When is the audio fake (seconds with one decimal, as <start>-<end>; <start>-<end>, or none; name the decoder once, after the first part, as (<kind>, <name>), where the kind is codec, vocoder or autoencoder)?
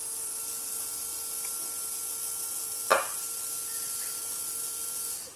none